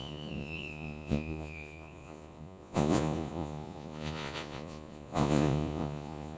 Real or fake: fake